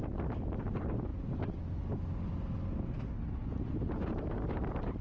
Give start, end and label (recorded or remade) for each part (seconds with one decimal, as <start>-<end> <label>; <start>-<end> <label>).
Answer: 0.0-5.0 recorded